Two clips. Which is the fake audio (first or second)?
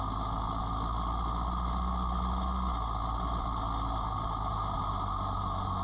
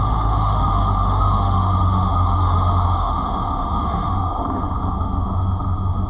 second